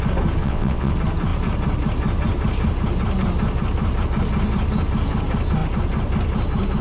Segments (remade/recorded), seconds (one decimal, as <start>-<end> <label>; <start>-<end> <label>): 0.0-0.4 recorded; 0.4-0.9 remade; 0.9-6.8 recorded